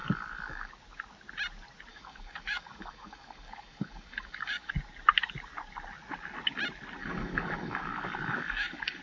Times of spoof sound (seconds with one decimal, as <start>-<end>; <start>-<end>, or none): 0.0-0.7; 1.9-4.7; 7.0-9.0